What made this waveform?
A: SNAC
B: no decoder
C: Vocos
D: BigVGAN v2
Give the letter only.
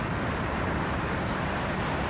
B